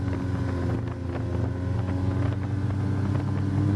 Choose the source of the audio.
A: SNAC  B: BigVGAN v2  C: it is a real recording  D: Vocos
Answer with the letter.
C